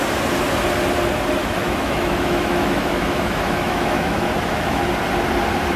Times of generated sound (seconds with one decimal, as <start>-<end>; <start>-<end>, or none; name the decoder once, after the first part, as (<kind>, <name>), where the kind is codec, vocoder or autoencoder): 1.4-4.9 (autoencoder, DAC-VAE)